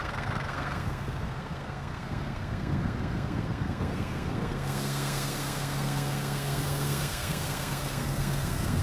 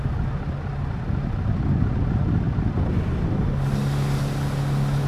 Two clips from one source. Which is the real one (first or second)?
second